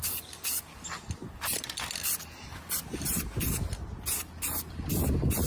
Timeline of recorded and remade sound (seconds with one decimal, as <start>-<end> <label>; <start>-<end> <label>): 0.0-5.5 recorded